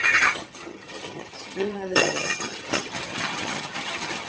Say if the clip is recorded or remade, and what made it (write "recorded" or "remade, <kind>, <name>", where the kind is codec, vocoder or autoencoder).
remade, vocoder, HiFi-GAN